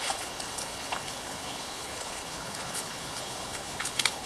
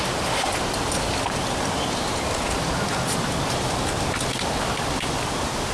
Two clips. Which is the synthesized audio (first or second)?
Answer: first